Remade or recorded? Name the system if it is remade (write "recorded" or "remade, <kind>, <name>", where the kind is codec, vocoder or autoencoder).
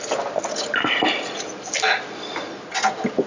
recorded